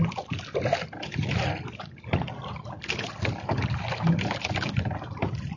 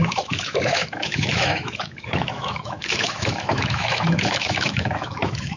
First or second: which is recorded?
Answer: first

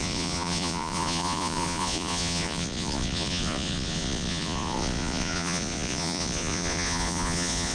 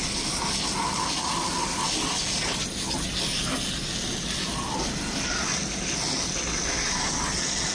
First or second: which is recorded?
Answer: second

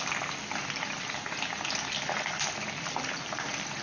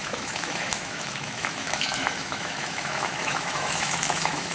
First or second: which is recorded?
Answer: first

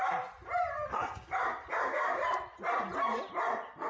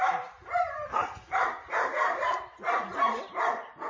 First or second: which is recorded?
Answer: first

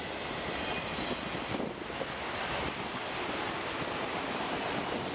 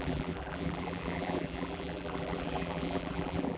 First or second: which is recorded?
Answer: first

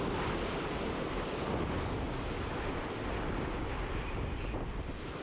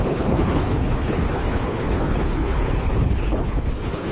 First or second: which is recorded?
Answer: first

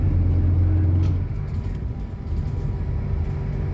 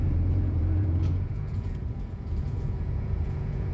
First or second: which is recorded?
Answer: first